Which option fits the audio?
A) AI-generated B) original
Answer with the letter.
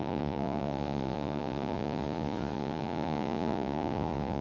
A